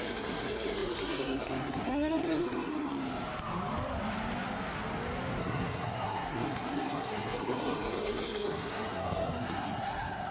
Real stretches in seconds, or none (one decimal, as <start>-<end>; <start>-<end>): 2.9-5.4